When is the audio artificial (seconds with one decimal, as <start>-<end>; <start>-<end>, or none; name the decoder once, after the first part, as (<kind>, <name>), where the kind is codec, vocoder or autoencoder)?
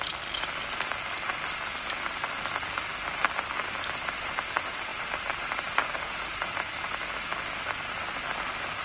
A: 3.6-7.3 (vocoder, BigVGAN v2)